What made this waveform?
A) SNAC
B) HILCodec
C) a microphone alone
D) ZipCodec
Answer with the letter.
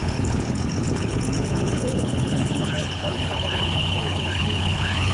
B